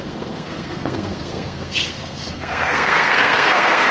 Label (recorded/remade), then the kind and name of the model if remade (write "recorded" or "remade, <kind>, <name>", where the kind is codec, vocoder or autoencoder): remade, codec, SNAC